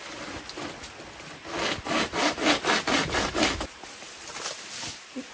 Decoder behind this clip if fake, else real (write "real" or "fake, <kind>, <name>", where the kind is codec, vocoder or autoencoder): real